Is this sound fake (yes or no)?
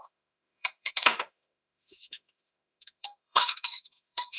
yes